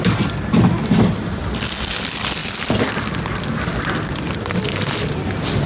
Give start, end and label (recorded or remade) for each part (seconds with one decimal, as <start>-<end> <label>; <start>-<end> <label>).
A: 0.0-5.7 recorded